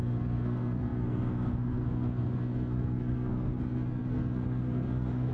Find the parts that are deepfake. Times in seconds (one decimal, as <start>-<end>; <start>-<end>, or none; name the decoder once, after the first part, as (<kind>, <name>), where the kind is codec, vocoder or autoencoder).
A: 0.0-5.3 (codec, SNAC)